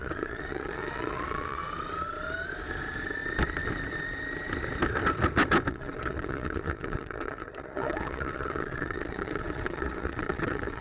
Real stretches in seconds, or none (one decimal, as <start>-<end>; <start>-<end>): 1.6-5.7